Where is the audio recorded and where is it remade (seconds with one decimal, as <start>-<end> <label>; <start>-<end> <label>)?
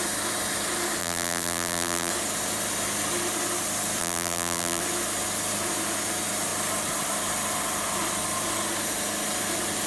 0.0-1.0 recorded; 1.0-2.1 remade; 2.1-4.0 recorded; 4.0-4.8 remade; 4.8-9.9 recorded